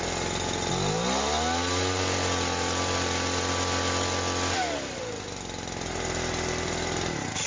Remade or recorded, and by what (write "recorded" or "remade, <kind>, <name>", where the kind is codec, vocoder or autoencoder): recorded